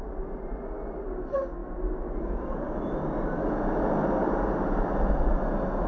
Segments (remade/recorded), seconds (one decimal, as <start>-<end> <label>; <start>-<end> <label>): 0.0-5.9 recorded